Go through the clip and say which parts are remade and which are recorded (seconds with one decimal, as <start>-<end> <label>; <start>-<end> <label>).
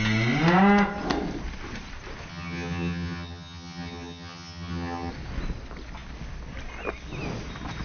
0.0-2.3 recorded; 2.3-5.1 remade; 5.1-7.8 recorded